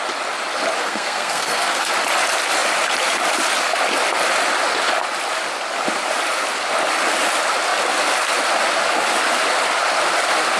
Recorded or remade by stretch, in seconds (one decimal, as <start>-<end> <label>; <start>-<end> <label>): 0.0-0.8 recorded; 0.8-1.9 remade; 1.9-10.6 recorded